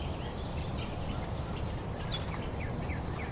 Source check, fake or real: real